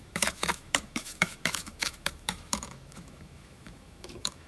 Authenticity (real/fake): fake